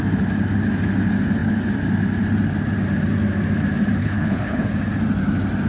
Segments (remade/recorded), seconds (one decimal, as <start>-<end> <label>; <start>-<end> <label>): 0.0-4.0 recorded; 4.0-4.7 remade; 4.7-5.7 recorded